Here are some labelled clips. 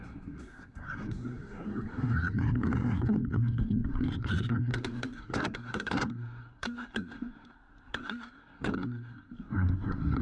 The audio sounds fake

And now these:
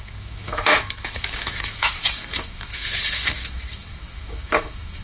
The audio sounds fake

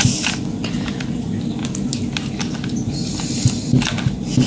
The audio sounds real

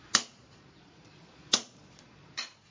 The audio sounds fake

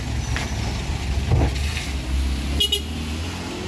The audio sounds real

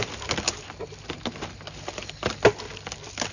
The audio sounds real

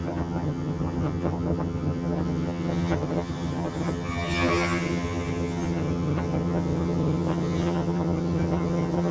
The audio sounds fake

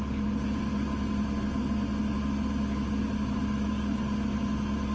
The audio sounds real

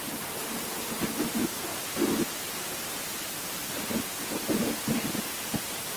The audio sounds fake